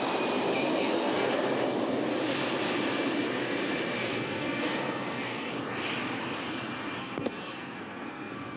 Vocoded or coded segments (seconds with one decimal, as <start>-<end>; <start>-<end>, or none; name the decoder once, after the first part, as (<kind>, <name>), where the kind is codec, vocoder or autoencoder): 0.5-1.3 (codec, SNAC); 4.0-5.5; 7.0-8.6